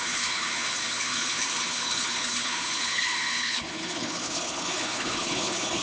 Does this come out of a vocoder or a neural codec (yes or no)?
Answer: yes